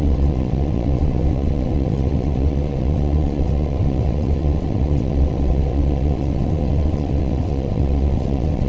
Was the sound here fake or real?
fake